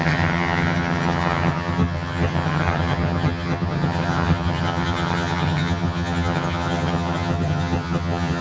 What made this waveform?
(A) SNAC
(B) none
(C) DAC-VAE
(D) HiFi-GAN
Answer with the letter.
D